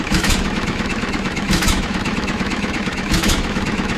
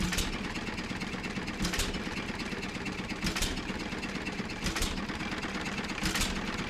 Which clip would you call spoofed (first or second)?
first